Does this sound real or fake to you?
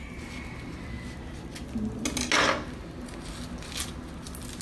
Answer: real